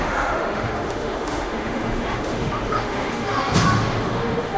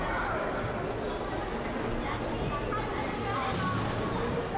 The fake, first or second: first